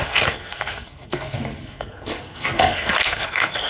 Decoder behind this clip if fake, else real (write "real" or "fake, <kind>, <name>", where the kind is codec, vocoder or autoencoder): fake, codec, SNAC